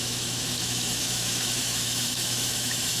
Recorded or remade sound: remade